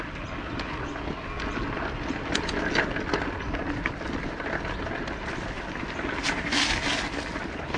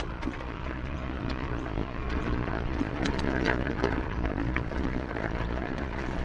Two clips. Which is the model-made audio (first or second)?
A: second